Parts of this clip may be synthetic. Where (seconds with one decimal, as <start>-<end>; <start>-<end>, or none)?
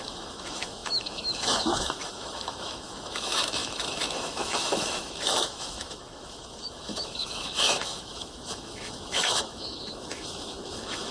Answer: 0.0-11.1